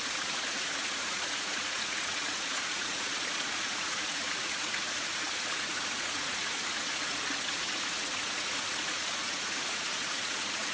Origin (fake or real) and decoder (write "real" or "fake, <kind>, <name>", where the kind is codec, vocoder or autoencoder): fake, vocoder, Vocos